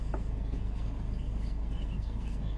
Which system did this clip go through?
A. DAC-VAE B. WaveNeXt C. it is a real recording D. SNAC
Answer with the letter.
D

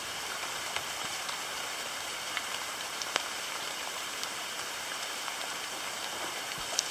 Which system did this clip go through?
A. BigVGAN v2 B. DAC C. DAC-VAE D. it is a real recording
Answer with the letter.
A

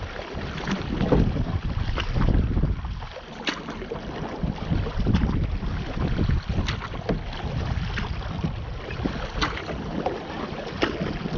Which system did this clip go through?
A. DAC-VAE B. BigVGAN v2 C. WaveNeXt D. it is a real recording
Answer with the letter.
D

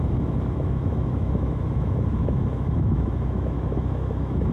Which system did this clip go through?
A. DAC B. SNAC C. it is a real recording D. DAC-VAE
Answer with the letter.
D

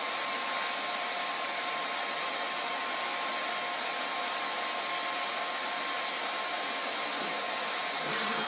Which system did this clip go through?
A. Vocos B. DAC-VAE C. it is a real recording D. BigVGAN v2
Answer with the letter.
C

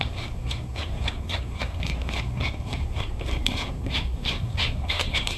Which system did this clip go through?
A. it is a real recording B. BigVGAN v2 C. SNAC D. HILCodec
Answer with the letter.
C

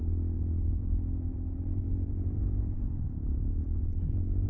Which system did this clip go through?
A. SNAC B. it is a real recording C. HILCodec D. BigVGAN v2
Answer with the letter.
D